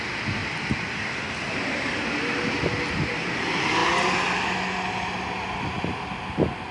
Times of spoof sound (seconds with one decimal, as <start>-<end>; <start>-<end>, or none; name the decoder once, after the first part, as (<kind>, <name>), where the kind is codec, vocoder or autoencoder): none